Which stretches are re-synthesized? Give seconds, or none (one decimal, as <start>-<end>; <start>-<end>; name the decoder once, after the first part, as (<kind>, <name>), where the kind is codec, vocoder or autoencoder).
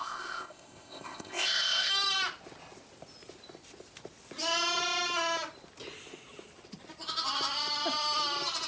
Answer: 0.0-1.9 (codec, ZipCodec)